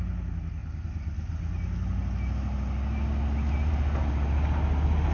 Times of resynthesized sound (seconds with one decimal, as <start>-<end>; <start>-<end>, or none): none